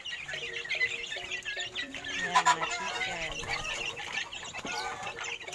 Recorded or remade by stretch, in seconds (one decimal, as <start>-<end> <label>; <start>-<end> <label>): 0.0-0.4 remade; 0.4-1.8 recorded; 1.8-5.5 remade